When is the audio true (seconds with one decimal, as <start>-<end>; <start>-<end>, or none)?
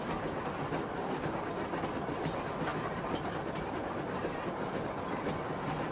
0.0-2.7; 4.1-5.9